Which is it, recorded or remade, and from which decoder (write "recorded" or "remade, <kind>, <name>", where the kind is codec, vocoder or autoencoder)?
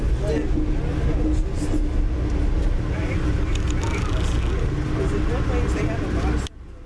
recorded